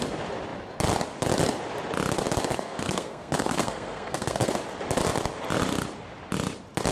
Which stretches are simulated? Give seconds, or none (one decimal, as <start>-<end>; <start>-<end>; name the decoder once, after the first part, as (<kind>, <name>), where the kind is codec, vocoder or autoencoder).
2.5-4.5 (codec, SNAC)